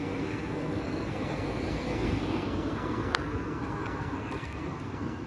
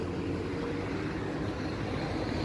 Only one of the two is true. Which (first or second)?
second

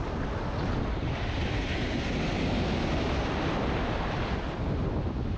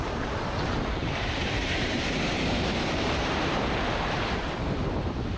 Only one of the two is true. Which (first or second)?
first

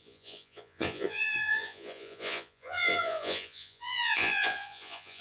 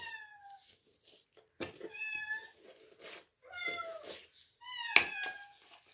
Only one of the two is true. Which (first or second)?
second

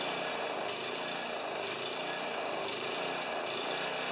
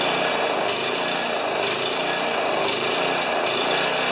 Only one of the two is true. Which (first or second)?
second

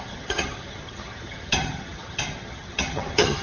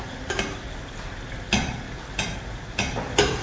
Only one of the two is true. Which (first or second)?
second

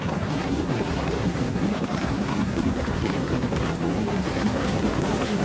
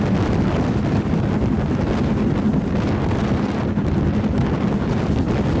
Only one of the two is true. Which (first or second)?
second